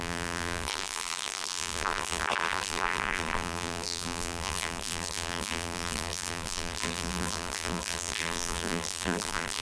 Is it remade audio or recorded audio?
remade